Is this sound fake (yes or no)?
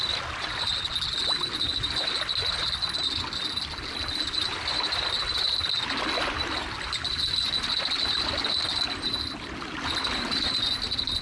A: no